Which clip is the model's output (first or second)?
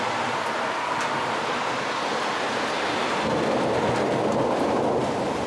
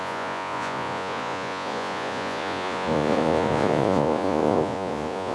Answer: second